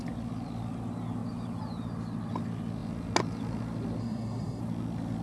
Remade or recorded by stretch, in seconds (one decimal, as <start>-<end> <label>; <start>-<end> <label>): 0.0-4.0 recorded; 4.0-4.6 remade; 4.6-5.2 recorded